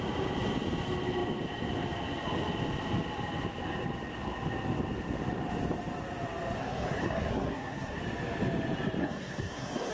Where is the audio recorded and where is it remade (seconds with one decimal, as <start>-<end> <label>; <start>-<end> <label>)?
0.0-6.6 recorded; 6.6-8.0 remade; 8.0-9.0 recorded; 9.0-9.9 remade